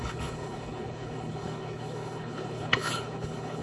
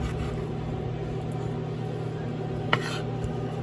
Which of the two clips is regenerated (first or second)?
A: first